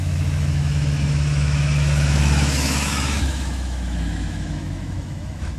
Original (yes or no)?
no